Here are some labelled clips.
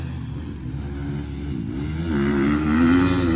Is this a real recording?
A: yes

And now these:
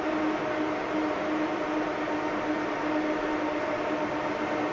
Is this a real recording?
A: yes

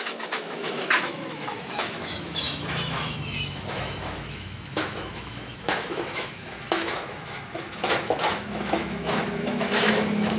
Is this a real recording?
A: no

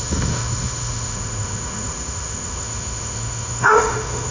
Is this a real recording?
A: no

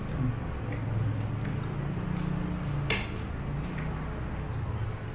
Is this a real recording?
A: yes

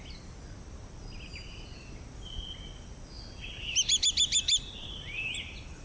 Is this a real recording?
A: yes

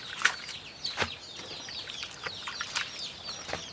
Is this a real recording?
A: yes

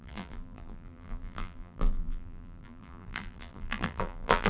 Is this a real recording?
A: no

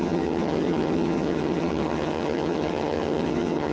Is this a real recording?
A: no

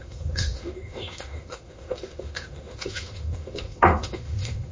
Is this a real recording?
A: no